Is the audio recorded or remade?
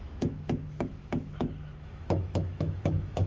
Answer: remade